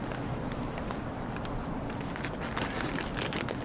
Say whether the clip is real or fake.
real